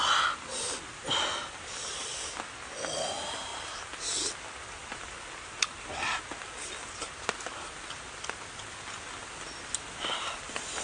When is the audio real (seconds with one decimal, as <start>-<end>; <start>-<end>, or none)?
0.0-10.8